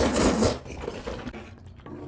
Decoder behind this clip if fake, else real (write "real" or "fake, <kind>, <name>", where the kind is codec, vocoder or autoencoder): real